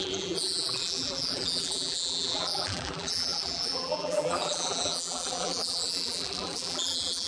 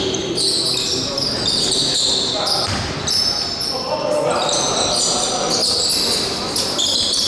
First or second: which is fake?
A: first